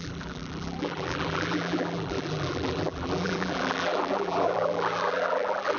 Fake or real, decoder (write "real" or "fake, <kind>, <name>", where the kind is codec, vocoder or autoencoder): fake, vocoder, BigVGAN v2